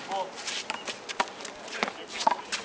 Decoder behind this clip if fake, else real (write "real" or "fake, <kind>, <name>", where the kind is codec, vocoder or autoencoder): real